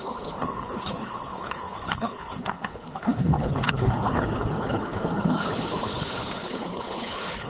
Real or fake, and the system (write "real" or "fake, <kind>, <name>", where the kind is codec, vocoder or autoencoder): fake, codec, HILCodec